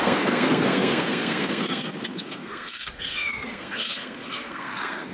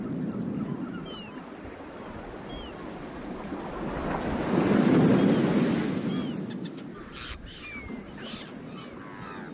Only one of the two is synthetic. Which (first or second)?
first